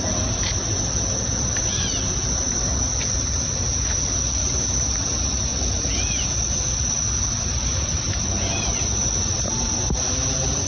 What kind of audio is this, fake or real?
real